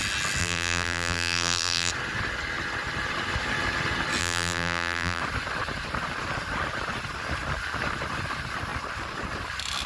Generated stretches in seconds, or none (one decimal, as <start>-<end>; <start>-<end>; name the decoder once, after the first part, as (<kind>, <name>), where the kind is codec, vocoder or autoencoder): 0.4-1.9 (vocoder, BigVGAN v2); 4.2-5.2